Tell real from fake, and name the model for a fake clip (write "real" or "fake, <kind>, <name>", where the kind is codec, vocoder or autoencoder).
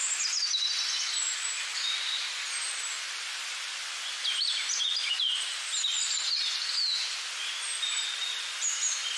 real